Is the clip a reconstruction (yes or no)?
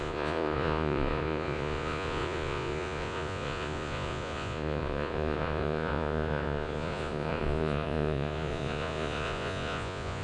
yes